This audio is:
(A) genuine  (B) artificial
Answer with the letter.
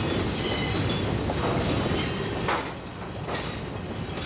A